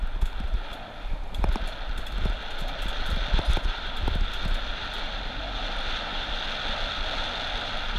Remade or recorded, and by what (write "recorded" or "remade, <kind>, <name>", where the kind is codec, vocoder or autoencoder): recorded